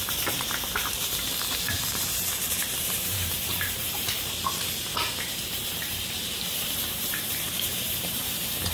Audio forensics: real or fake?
fake